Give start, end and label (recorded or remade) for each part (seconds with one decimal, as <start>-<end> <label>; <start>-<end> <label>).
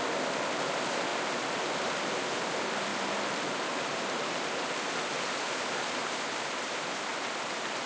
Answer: 0.0-2.9 recorded; 2.9-5.1 remade; 5.1-7.1 recorded; 7.1-7.9 remade